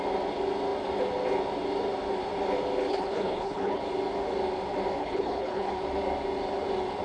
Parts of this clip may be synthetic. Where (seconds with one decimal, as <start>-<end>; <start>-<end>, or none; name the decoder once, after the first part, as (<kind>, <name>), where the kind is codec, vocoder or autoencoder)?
2.9-3.8 (codec, HILCodec); 5.0-5.7